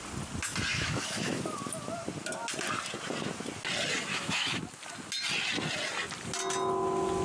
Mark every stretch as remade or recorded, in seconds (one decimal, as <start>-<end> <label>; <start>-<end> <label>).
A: 0.0-0.7 recorded; 0.7-1.4 remade; 1.4-4.1 recorded; 4.1-4.6 remade; 4.6-7.2 recorded